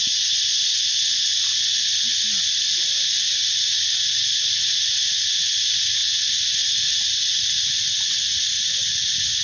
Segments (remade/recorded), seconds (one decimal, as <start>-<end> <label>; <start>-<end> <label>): 0.0-9.4 recorded